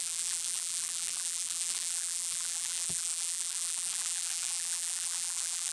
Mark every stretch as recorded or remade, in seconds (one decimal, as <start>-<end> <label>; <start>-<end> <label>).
0.0-5.7 remade